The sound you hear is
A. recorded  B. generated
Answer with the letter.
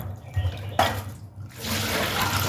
A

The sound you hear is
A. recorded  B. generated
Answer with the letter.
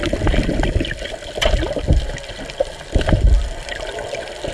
A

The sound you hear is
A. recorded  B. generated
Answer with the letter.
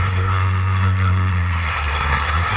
B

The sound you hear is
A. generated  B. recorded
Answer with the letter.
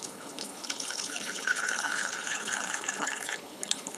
A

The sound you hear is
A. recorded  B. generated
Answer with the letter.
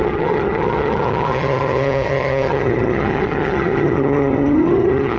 B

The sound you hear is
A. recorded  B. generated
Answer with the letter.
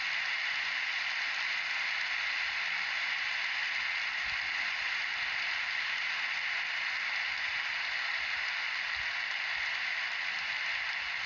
A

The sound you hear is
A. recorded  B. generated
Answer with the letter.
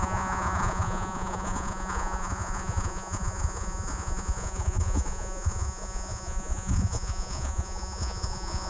B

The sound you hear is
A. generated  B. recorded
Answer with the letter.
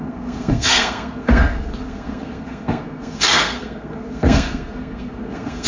A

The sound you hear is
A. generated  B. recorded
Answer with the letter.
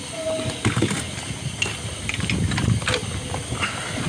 B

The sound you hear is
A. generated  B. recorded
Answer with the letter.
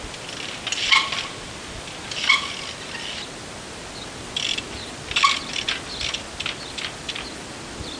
B